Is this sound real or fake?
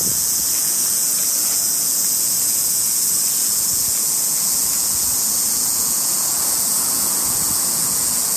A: fake